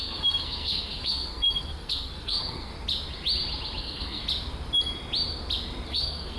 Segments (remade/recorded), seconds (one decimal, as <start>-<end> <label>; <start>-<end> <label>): 0.0-2.7 remade; 2.7-3.8 recorded; 3.8-4.2 remade; 4.2-5.9 recorded; 5.9-6.4 remade